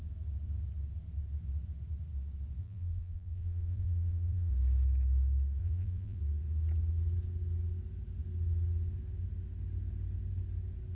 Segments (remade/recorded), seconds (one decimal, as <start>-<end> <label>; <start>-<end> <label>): 0.0-2.6 recorded; 2.6-4.5 remade; 4.5-5.6 recorded; 5.6-6.2 remade; 6.2-10.9 recorded